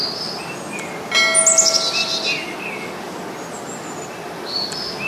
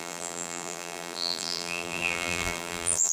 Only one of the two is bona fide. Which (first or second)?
first